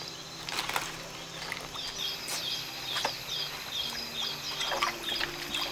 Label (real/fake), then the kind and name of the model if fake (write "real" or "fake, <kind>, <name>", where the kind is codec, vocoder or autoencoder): real